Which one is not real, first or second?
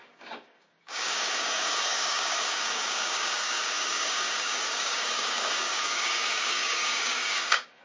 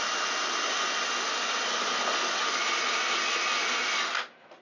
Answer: first